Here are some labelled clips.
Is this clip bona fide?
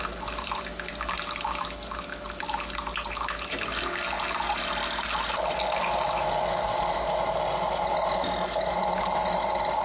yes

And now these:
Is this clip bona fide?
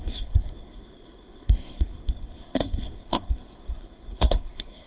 no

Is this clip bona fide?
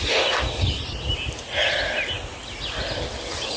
yes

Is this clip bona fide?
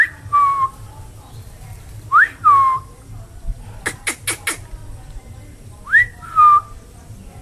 yes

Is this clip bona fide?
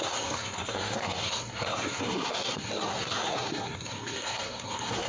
no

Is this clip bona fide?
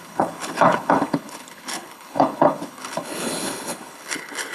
no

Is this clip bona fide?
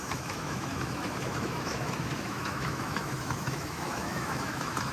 no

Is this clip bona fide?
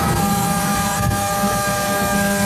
no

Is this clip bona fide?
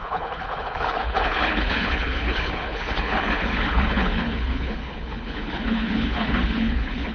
no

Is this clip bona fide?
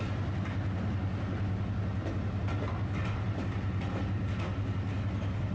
yes